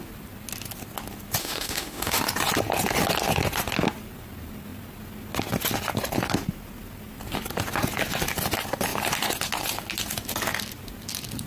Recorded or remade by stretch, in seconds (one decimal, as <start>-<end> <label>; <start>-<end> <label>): 0.0-1.4 recorded; 1.4-2.2 remade; 2.2-11.5 recorded